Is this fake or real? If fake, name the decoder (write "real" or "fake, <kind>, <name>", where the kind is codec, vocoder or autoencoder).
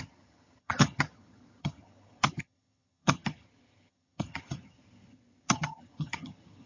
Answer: fake, vocoder, HiFi-GAN